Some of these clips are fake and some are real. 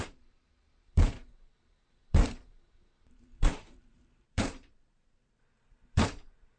fake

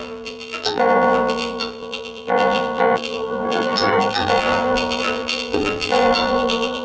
fake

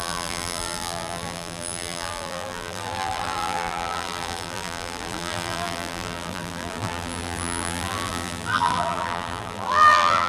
fake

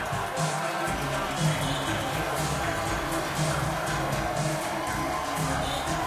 real